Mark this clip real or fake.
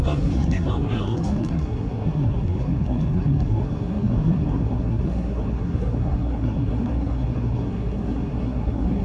fake